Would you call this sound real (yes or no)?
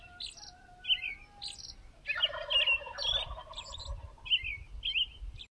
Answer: yes